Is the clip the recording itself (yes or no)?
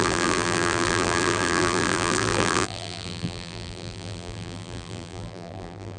no